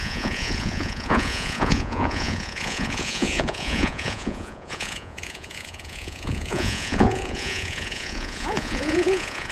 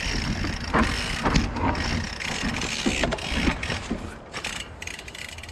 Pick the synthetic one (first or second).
first